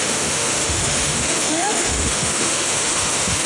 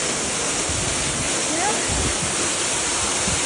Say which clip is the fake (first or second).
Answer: first